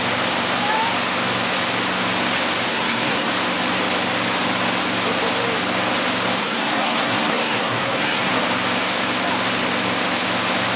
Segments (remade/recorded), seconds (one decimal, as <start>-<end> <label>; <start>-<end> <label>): 0.0-2.7 recorded; 2.7-3.3 remade; 3.3-6.4 recorded; 6.4-8.4 remade; 8.4-10.8 recorded